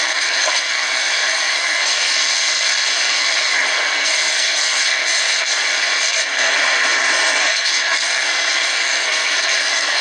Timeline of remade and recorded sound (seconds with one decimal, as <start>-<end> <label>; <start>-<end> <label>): 0.0-10.0 remade